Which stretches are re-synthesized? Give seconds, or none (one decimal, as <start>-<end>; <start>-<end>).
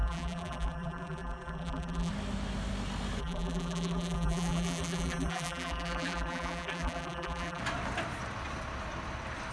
0.0-2.1; 3.2-7.6